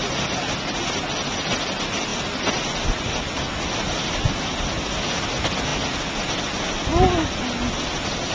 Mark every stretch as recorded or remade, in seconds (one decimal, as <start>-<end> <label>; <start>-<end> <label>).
0.0-8.3 recorded